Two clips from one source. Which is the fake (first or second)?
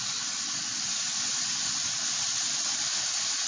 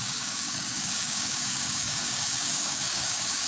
second